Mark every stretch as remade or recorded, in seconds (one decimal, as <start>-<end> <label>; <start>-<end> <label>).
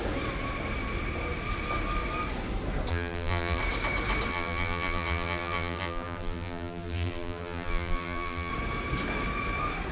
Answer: 0.0-2.9 recorded; 2.9-3.6 remade; 3.6-4.3 recorded; 4.3-8.5 remade; 8.5-9.9 recorded